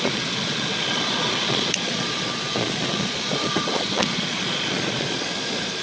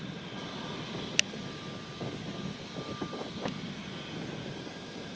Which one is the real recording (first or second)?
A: second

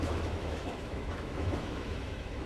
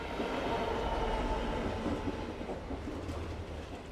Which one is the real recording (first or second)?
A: second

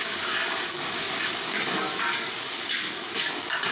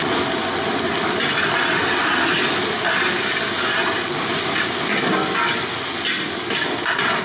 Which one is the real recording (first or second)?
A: second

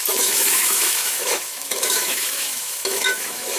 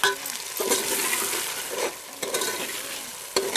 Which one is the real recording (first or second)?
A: second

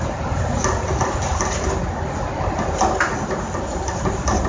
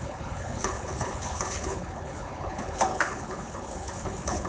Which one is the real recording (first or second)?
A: first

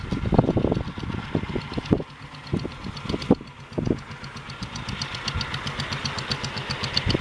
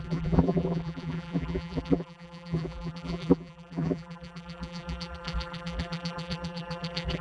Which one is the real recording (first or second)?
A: first